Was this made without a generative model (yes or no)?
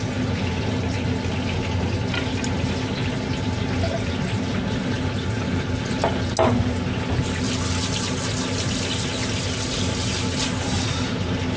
yes